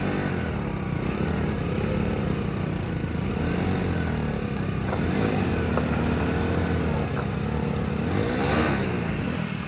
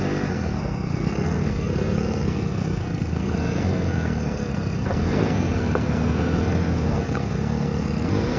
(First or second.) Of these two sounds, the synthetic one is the second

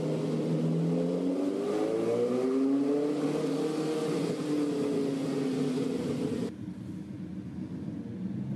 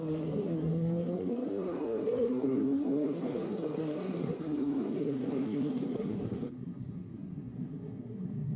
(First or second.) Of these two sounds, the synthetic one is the second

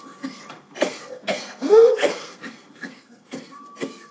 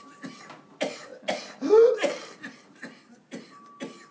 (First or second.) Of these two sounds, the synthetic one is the first